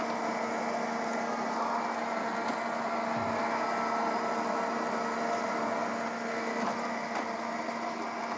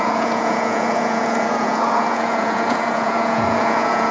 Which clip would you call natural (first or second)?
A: first